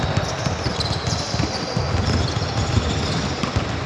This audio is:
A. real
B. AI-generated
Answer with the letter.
A